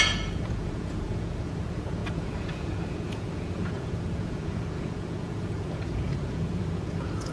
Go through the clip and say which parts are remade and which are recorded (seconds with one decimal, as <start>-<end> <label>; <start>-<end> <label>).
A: 0.0-7.3 remade